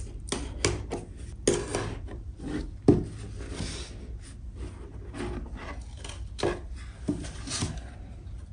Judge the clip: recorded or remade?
recorded